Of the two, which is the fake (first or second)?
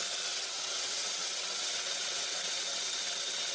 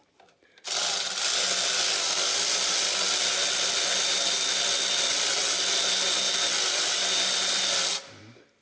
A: first